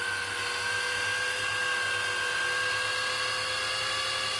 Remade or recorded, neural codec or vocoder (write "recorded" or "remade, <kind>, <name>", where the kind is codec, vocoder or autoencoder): recorded